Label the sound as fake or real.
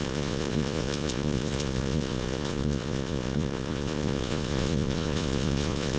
fake